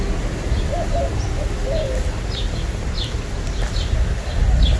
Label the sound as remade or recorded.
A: recorded